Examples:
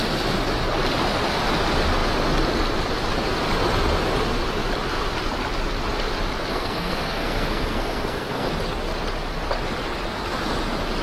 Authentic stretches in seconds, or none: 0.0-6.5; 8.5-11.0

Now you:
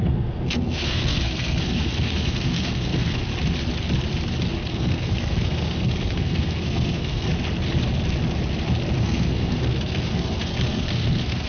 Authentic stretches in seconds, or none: 3.2-4.7; 7.3-9.0

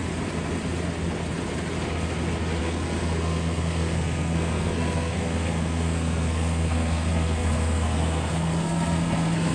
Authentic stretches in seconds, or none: 0.0-2.6

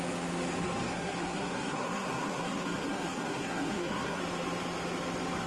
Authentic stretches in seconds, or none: 0.0-0.9; 4.2-5.5

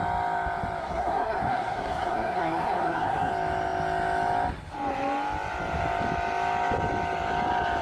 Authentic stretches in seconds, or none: 0.0-0.8; 3.3-7.8

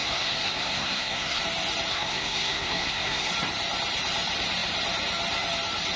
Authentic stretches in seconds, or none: 1.4-1.9; 3.3-6.0

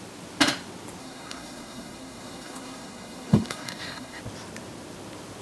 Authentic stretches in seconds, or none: 0.0-1.0; 4.2-5.4

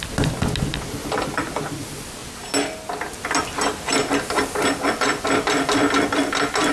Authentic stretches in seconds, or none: 0.0-6.7